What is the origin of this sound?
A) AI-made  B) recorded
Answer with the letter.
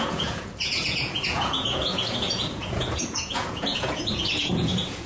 A